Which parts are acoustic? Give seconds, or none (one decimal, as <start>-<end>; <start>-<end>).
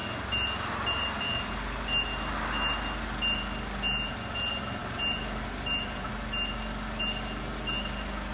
0.0-8.3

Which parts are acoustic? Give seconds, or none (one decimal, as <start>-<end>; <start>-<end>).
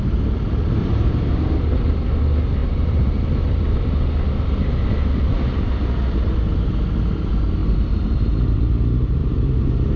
0.0-0.8; 1.3-2.6; 3.6-7.6; 8.4-9.2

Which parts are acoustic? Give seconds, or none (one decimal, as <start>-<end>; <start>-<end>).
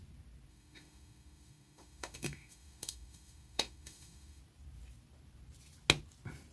0.0-0.5; 4.4-6.5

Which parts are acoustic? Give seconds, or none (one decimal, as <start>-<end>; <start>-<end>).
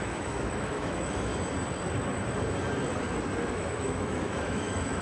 1.3-3.5